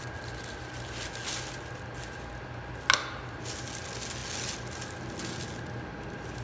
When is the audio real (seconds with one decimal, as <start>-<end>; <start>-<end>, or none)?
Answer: 0.0-6.4